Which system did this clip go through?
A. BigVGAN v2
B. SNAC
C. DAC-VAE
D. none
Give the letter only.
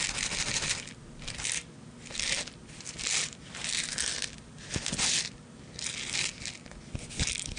D